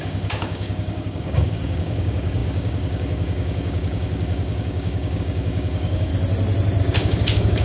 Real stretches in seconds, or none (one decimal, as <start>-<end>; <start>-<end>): 6.1-6.8

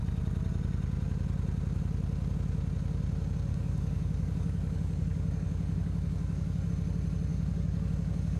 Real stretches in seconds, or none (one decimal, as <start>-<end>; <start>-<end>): 0.0-3.5; 6.7-7.3

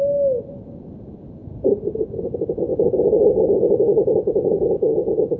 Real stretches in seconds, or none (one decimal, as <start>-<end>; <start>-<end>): 0.0-2.7

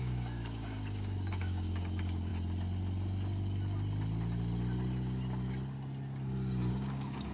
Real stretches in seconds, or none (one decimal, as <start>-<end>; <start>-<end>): 2.3-6.7

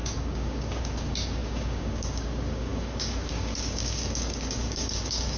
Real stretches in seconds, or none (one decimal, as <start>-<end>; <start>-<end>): none

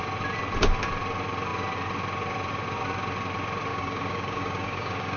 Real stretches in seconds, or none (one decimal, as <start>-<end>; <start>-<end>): 0.0-3.7

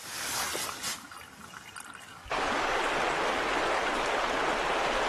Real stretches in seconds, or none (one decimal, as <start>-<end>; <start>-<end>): 0.0-2.0; 2.8-5.1